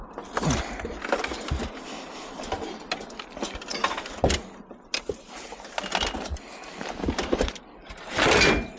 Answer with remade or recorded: recorded